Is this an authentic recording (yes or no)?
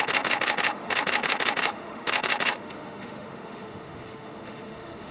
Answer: no